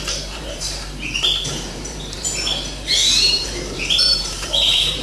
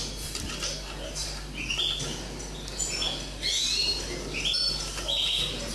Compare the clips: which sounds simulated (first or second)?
first